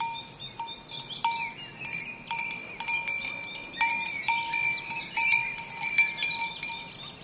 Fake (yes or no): no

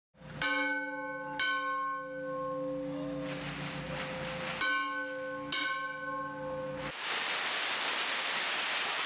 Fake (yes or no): no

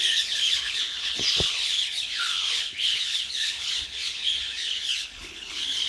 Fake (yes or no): yes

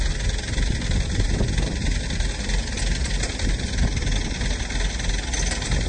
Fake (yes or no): no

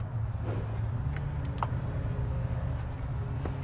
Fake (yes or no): no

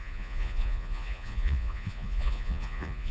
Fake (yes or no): yes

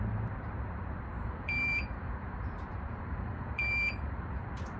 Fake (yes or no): yes